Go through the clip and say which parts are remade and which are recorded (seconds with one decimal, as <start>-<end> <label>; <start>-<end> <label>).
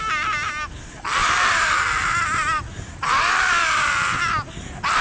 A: 0.0-1.2 recorded; 1.2-4.2 remade; 4.2-5.0 recorded